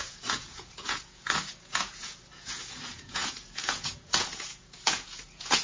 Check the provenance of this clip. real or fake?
fake